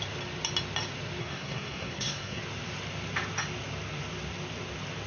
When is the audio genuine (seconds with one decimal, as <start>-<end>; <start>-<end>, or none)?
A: 0.0-1.2; 2.4-5.1